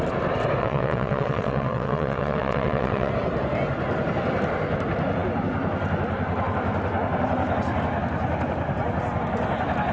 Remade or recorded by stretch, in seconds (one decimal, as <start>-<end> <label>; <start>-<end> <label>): 0.0-0.6 recorded; 0.6-3.1 remade; 3.1-9.9 recorded